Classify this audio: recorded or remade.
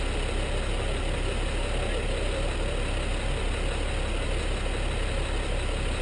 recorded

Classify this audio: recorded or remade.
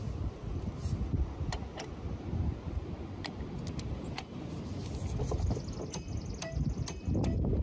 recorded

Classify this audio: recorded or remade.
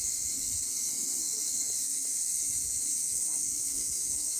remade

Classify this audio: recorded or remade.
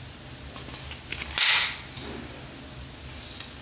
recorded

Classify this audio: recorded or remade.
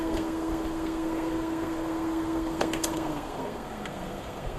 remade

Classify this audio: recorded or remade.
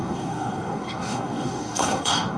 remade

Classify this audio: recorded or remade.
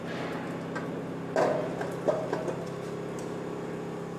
recorded